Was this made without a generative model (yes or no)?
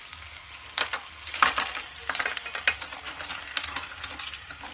yes